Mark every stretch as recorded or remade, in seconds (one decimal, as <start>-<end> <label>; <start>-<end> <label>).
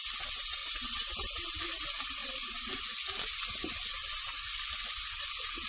0.0-0.6 recorded; 0.6-1.6 remade; 1.6-5.7 recorded